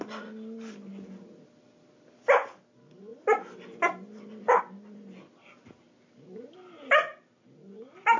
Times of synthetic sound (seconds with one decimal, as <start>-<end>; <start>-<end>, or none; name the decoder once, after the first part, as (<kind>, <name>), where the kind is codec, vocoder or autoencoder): none